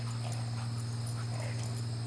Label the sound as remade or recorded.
recorded